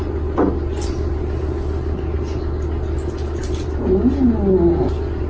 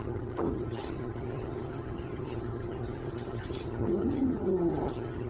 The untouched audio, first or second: first